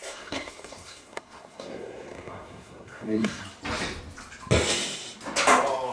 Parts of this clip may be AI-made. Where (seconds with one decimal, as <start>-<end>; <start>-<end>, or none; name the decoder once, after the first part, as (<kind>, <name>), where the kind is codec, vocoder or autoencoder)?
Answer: 0.0-3.4 (codec, SNAC)